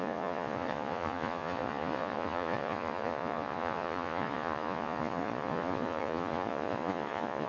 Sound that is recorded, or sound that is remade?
remade